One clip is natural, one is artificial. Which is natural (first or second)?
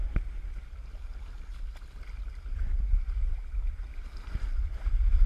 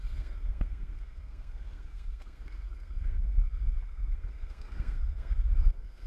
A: first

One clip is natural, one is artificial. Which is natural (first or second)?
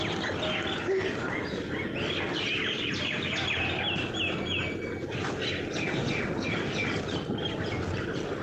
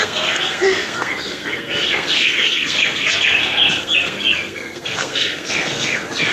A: first